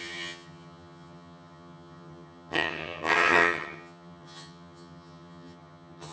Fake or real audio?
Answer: fake